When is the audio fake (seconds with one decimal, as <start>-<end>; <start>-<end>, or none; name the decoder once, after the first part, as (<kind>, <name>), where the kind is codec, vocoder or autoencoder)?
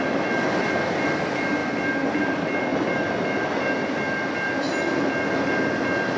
1.6-2.2 (vocoder, BigVGAN v2); 2.7-3.6